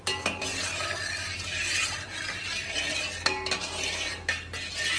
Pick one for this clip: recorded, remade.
recorded